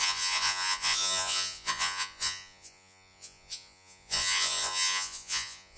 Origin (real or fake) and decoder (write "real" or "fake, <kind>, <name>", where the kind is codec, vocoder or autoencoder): fake, vocoder, Vocos